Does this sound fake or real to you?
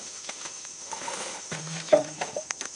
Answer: fake